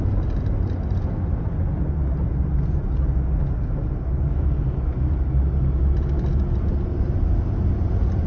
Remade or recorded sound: recorded